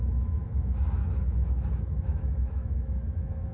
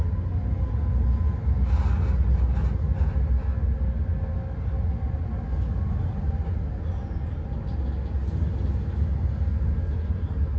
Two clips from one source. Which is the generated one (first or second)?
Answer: first